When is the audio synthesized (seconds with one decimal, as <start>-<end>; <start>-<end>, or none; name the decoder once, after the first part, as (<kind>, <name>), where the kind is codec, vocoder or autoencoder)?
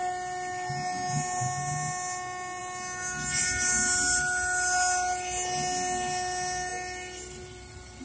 none